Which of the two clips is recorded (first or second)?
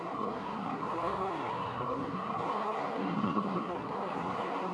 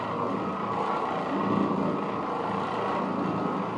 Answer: second